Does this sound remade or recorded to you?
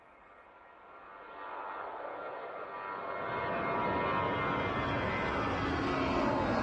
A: recorded